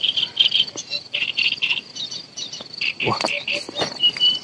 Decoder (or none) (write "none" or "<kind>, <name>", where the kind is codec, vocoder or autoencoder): vocoder, BigVGAN v2